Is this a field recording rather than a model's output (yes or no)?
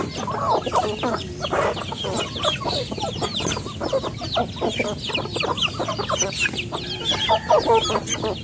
yes